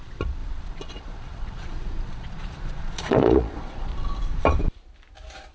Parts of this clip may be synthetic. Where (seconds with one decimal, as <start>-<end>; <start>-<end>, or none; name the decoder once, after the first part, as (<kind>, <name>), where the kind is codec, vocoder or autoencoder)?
0.0-3.9 (vocoder, Vocos)